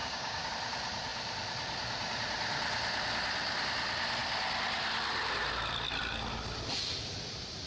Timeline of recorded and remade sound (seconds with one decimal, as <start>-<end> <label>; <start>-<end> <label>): 0.0-0.5 remade; 0.5-7.7 recorded